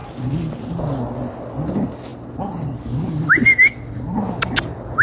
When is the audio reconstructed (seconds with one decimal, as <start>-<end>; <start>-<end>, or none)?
none